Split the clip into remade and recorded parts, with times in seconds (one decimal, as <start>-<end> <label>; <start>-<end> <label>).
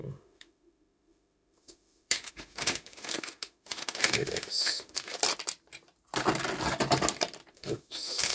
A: 0.0-5.2 remade; 5.2-7.5 recorded; 7.5-8.3 remade